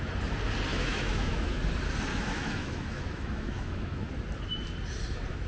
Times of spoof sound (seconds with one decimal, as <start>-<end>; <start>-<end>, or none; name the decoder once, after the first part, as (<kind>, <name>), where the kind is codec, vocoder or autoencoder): 0.7-1.6 (autoencoder, DAC-VAE); 2.1-4.1